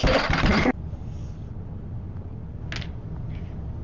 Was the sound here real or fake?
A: real